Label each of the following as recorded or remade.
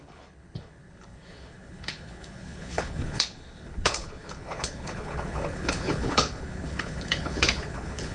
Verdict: remade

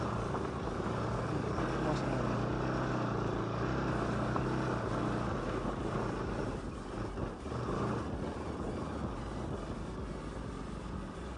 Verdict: recorded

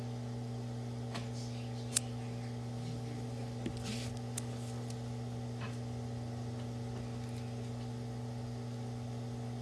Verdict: recorded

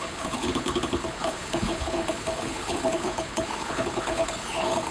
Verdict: remade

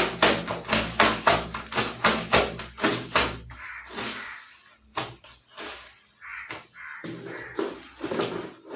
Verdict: recorded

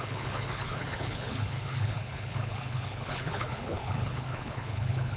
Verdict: remade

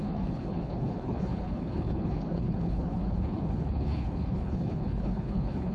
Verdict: remade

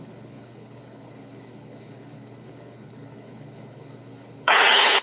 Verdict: remade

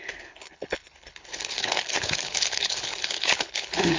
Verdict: remade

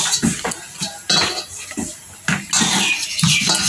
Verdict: recorded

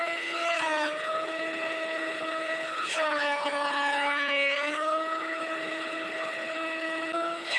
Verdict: remade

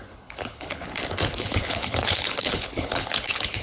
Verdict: remade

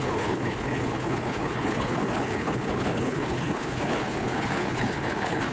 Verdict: remade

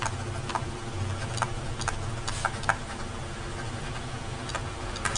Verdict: recorded